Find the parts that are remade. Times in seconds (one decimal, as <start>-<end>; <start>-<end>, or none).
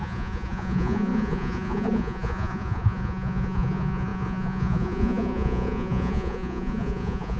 0.0-7.4